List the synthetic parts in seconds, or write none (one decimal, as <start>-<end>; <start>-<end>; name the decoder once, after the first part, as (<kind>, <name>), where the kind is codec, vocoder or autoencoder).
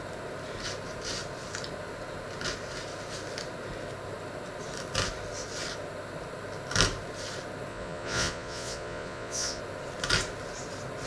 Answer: 7.7-9.6 (vocoder, Vocos)